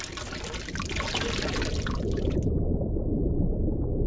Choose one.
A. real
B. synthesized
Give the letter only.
A